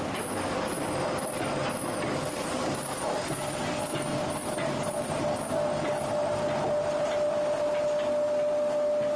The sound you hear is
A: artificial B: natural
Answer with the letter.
B